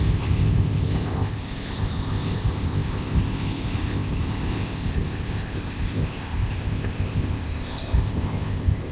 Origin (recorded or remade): remade